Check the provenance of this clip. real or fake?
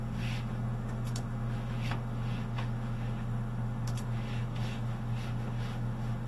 fake